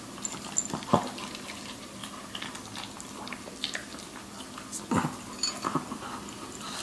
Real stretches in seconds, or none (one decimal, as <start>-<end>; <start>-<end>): 0.0-6.8